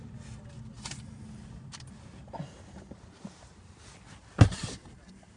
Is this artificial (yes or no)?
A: no